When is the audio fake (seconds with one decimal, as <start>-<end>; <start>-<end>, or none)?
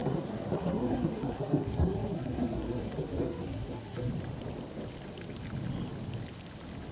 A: 0.0-4.1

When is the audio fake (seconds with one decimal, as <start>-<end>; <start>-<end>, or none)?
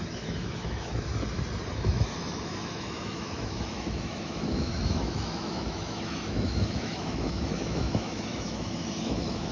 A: 0.0-1.1; 1.7-9.5